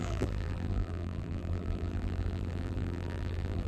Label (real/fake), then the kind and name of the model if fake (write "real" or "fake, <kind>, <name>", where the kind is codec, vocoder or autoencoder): fake, vocoder, BigVGAN v2